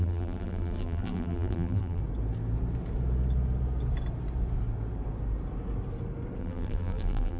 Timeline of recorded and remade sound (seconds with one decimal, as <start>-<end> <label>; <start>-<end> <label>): 0.0-2.0 remade; 2.0-6.4 recorded; 6.4-7.4 remade